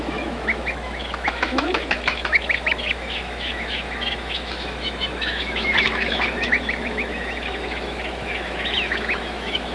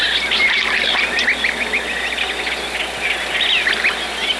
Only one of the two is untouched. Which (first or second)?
second